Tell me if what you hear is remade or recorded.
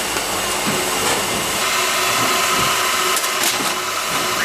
recorded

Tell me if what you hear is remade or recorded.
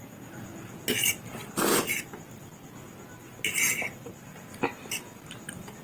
recorded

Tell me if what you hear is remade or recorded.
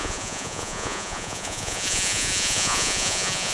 remade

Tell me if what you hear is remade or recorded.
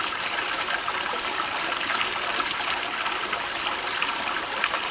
recorded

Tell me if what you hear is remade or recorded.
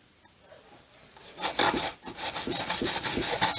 recorded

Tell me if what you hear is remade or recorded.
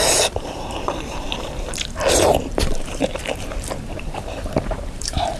remade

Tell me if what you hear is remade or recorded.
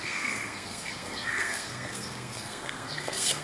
remade